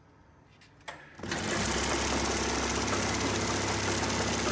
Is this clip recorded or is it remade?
recorded